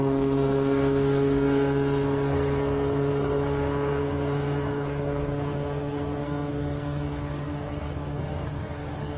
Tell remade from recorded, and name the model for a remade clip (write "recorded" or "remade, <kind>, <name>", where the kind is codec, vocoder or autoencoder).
remade, codec, SNAC